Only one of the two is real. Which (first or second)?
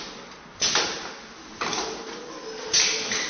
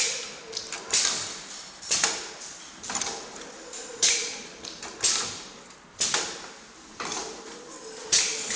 first